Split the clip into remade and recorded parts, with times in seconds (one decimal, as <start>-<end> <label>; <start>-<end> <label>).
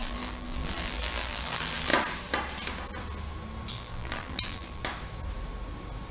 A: 0.0-1.9 remade; 1.9-3.7 recorded; 3.7-4.8 remade; 4.8-6.1 recorded